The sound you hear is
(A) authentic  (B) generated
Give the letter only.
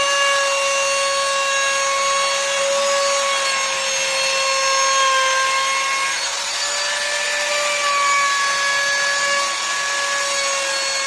A